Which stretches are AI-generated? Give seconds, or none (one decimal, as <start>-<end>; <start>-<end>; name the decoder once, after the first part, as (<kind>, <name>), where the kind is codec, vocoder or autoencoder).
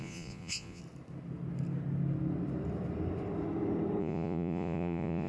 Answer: 0.0-0.8 (vocoder, Vocos); 4.0-5.3